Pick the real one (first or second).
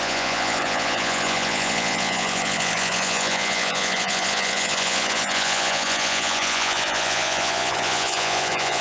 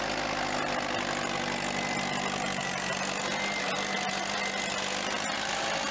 second